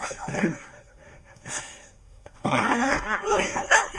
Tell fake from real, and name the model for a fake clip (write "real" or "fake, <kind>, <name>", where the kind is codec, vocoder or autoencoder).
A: fake, codec, SNAC